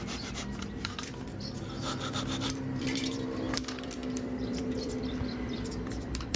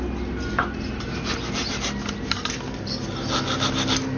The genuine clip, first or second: second